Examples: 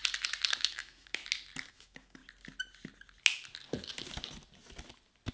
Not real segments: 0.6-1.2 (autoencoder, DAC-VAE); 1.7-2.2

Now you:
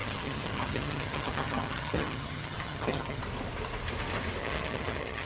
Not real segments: 0.0-3.2 (vocoder, HiFi-GAN); 4.4-5.3